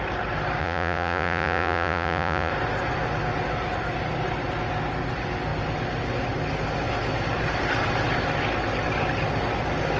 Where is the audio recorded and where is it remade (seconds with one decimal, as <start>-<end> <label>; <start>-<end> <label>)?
0.0-0.6 recorded; 0.6-2.5 remade; 2.5-10.0 recorded